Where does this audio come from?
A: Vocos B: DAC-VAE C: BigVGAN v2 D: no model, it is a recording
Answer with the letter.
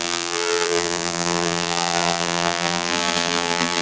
C